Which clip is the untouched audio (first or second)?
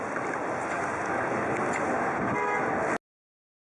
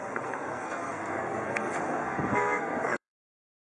first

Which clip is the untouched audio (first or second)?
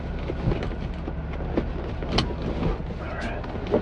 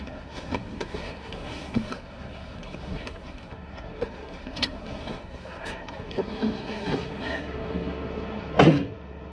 first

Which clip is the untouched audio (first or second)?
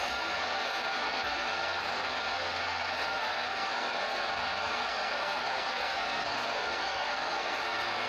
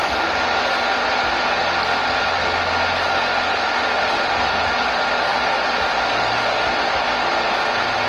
second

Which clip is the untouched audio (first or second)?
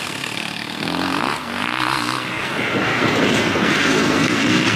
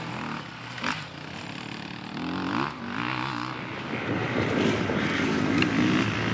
second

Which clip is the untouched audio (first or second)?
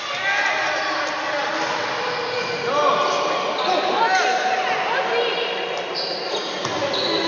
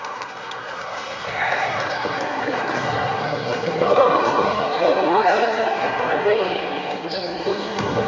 first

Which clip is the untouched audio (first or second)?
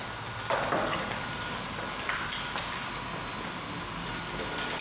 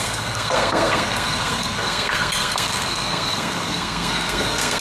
first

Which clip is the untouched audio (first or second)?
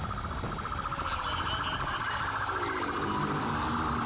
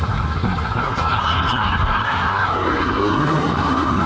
first